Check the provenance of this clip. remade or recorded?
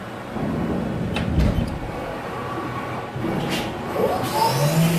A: recorded